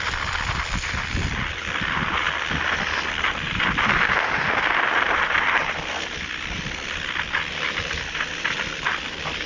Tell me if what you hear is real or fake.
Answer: fake